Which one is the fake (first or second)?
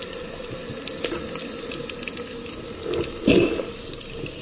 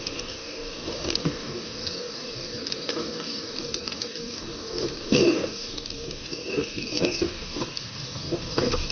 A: second